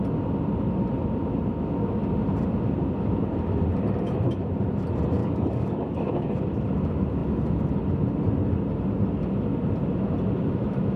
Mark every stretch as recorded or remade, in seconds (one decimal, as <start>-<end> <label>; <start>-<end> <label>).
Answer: 0.0-5.2 recorded; 5.2-6.3 remade; 6.3-11.0 recorded